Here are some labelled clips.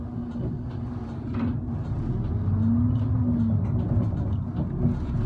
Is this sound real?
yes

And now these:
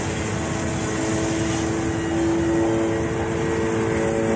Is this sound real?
yes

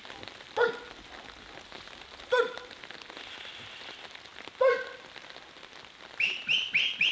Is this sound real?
yes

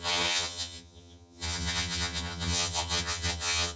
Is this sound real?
no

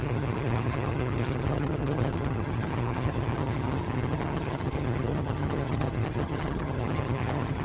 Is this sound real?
no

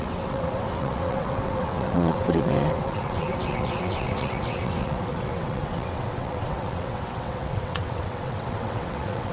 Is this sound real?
no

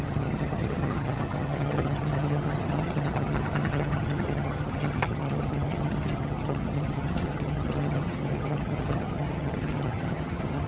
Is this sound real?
no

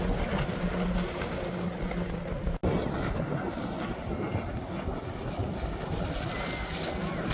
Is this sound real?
yes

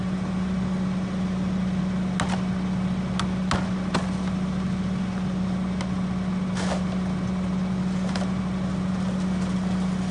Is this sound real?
yes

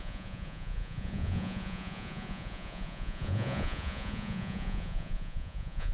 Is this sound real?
no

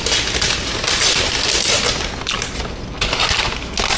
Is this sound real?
yes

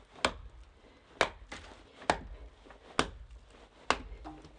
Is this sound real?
yes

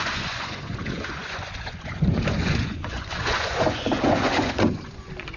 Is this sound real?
no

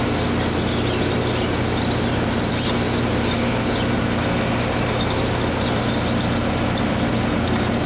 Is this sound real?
yes